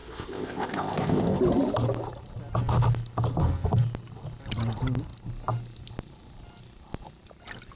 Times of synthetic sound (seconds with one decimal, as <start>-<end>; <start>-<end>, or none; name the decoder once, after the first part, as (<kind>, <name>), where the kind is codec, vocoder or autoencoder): 0.0-1.4 (codec, ZipCodec)